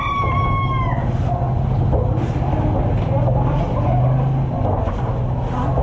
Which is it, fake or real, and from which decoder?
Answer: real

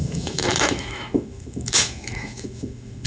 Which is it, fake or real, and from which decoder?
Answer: fake, autoencoder, DAC-VAE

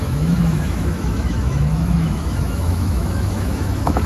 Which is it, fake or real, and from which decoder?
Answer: fake, autoencoder, DAC-VAE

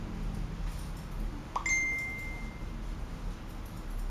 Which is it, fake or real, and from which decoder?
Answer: real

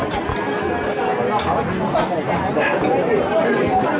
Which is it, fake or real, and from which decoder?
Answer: real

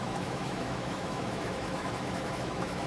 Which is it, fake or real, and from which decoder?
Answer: fake, autoencoder, DAC-VAE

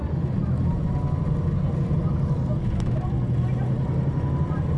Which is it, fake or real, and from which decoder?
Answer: real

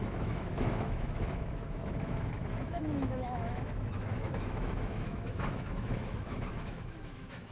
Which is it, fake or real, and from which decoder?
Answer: fake, autoencoder, DAC-VAE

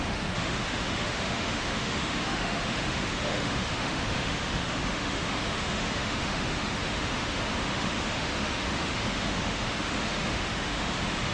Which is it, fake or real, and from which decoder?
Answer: fake, autoencoder, DAC-VAE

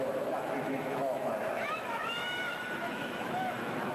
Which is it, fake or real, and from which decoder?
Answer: fake, autoencoder, DAC-VAE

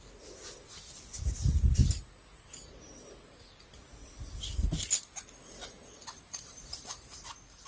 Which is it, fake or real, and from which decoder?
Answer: real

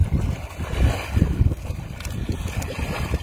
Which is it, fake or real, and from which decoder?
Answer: real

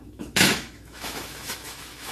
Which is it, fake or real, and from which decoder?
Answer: fake, autoencoder, DAC-VAE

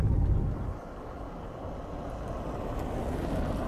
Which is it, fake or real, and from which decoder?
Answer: real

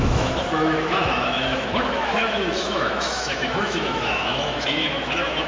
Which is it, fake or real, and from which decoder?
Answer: fake, autoencoder, DAC-VAE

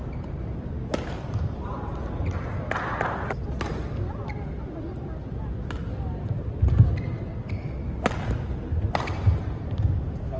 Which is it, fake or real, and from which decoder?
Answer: real